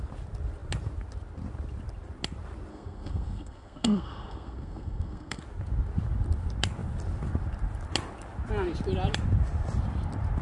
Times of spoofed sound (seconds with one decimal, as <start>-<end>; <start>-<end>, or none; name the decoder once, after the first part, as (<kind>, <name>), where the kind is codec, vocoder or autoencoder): 2.7-5.4 (codec, SNAC)